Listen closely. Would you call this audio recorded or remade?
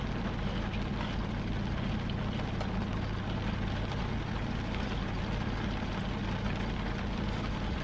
recorded